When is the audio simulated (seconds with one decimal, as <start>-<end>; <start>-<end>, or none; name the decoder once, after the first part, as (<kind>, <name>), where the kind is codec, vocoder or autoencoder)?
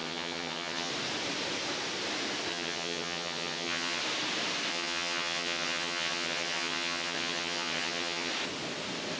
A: 0.0-0.9 (vocoder, HiFi-GAN); 2.5-4.0; 4.7-8.3